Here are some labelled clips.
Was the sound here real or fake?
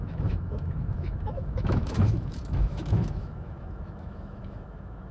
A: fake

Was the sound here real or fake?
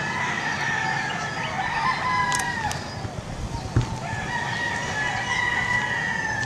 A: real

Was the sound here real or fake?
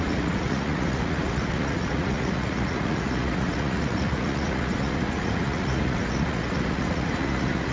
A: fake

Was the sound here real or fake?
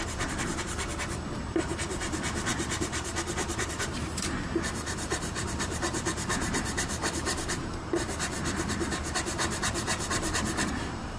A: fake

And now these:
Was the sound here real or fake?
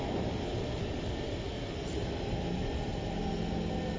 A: real